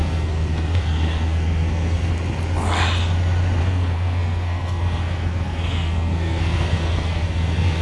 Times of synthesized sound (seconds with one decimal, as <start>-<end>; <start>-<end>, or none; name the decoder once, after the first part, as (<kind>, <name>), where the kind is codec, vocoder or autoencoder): 0.0-2.1 (codec, SNAC); 3.6-7.8